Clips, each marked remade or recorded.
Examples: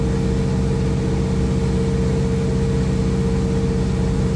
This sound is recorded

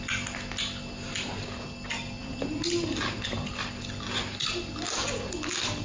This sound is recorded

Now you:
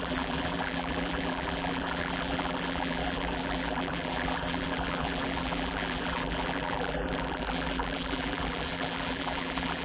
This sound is remade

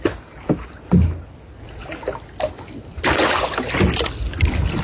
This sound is recorded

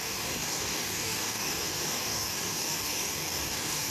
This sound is remade